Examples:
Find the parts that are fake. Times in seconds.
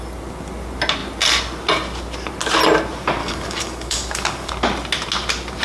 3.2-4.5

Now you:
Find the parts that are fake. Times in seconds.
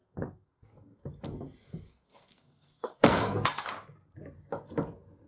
0.0-1.1; 1.6-3.7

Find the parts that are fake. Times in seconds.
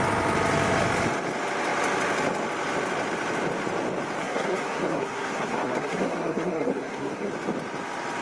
4.2-7.3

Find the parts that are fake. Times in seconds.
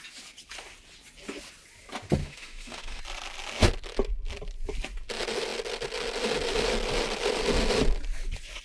2.2-3.0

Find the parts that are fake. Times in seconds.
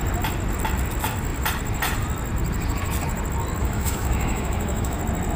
3.6-5.0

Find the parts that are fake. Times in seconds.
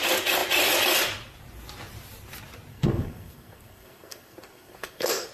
2.7-5.3